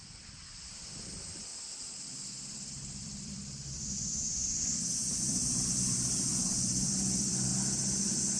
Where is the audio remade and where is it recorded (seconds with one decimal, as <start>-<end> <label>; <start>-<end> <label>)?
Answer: 0.0-8.4 remade